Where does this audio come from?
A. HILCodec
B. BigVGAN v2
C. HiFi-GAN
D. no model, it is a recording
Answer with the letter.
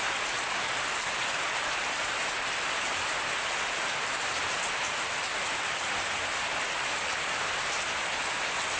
D